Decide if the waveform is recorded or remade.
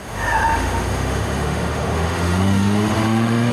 remade